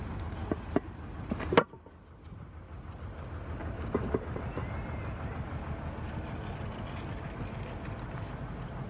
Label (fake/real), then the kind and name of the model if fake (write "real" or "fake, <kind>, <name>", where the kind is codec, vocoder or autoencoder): real